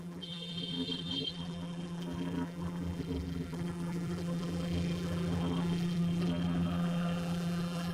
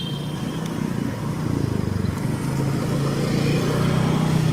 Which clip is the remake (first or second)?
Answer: first